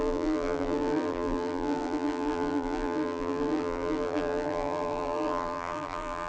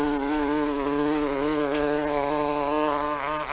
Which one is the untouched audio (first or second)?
second